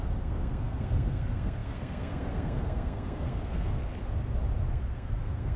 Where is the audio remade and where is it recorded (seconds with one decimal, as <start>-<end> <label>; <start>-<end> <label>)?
0.0-3.9 remade; 3.9-4.7 recorded; 4.7-5.6 remade